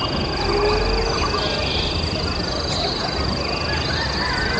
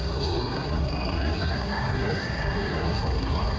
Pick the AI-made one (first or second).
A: second